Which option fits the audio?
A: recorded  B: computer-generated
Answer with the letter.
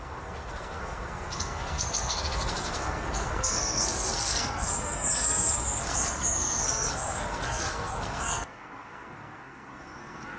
B